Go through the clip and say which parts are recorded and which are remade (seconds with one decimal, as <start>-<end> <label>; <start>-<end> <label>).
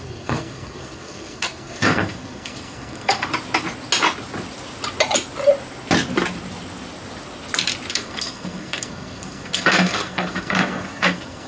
0.0-3.3 remade; 3.3-7.9 recorded; 7.9-11.5 remade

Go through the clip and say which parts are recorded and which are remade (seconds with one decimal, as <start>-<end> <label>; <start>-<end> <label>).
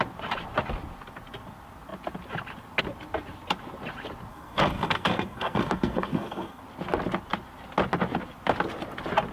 0.0-4.3 recorded; 4.3-6.6 remade; 6.6-9.3 recorded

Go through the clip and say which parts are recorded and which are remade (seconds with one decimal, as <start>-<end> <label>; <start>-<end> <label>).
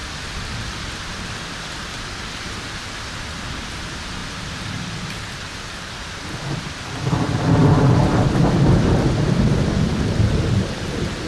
0.0-11.3 recorded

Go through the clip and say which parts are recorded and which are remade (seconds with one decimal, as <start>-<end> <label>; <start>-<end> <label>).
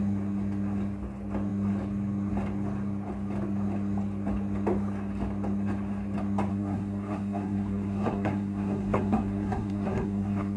0.0-6.5 recorded; 6.5-10.6 remade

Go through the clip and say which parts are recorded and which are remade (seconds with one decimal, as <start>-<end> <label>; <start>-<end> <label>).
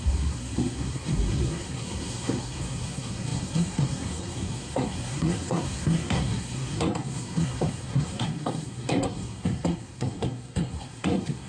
0.0-11.5 remade